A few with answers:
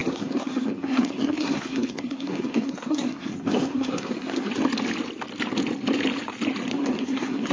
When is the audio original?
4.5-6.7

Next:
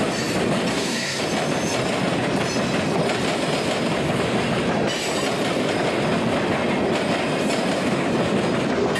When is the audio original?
0.0-0.7; 1.2-9.0